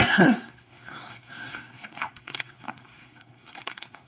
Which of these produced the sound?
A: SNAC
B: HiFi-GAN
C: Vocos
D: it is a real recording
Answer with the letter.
A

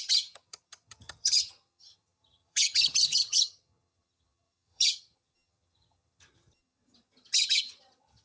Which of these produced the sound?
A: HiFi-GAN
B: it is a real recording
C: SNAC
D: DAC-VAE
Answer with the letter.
A